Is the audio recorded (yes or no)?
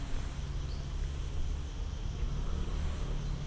yes